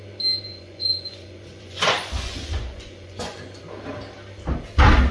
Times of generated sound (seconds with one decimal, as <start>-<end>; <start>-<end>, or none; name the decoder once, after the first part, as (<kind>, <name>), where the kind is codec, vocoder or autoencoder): 0.5-3.6 (vocoder, Vocos)